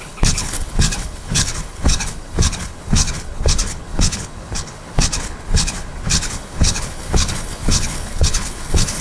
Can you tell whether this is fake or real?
fake